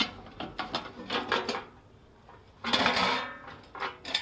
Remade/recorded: recorded